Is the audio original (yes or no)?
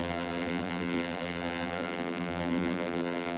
no